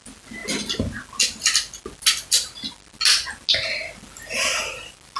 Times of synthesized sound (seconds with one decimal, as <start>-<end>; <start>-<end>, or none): none